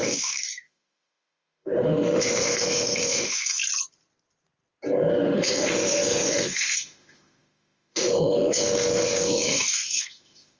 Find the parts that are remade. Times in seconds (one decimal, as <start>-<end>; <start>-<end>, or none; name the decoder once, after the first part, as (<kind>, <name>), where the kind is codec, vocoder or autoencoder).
0.0-3.6 (autoencoder, DAC-VAE); 5.1-10.6